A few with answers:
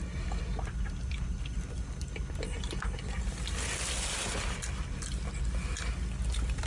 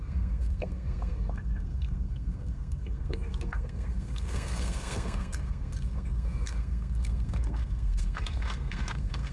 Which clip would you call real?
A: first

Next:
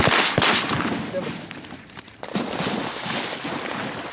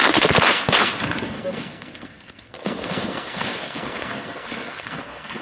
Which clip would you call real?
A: first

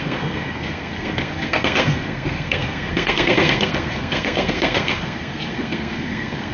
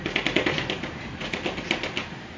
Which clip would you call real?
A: second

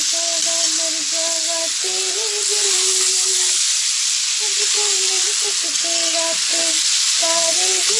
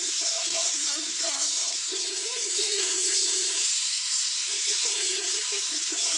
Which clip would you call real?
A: first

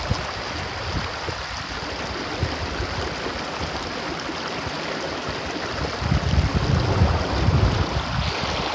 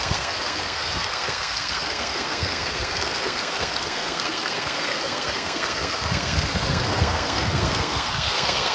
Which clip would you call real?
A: first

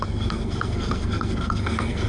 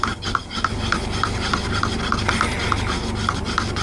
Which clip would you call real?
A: second